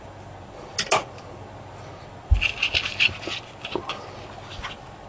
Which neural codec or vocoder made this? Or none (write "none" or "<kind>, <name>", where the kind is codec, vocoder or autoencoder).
none